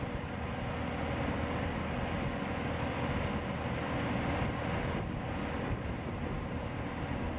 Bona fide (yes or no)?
yes